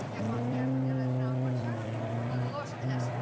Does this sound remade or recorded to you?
remade